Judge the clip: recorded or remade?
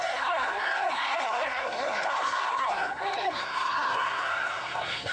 remade